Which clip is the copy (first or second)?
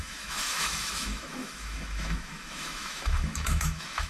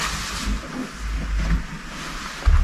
first